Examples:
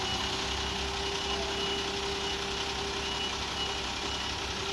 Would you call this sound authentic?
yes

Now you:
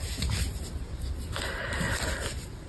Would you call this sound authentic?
yes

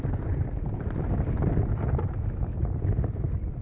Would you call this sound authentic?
yes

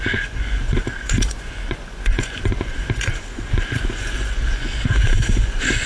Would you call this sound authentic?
no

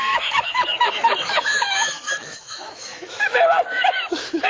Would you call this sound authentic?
no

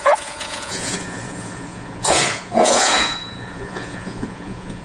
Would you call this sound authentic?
no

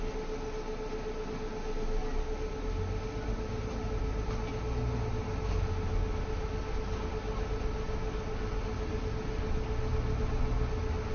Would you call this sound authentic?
yes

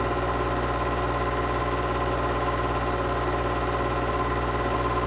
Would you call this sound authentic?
yes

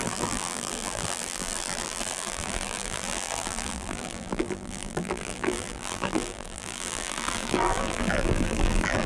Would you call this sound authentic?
no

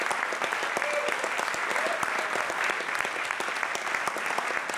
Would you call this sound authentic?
yes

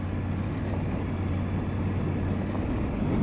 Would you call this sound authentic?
yes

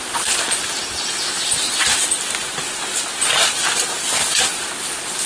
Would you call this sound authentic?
yes